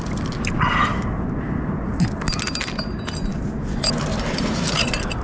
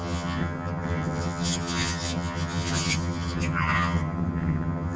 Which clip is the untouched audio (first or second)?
first